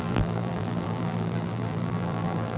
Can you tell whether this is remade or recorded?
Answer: remade